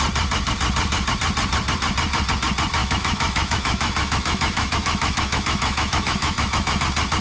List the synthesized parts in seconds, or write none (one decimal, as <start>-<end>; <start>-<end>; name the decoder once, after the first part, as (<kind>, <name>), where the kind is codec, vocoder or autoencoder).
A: 2.8-6.8 (autoencoder, DAC-VAE)